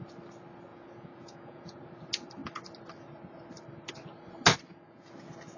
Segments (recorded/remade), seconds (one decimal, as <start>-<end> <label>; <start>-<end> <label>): 0.0-0.7 recorded; 0.7-1.8 remade; 1.8-4.5 recorded; 4.5-5.1 remade; 5.1-5.6 recorded